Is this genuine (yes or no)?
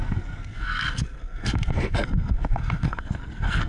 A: no